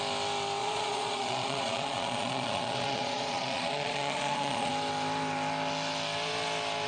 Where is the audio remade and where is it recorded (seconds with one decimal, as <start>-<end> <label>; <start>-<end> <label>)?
0.0-0.6 recorded; 0.6-4.7 remade; 4.7-6.9 recorded